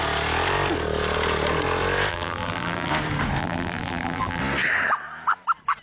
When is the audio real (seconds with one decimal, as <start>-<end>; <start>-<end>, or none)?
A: 0.0-2.1; 2.9-3.4; 4.4-5.8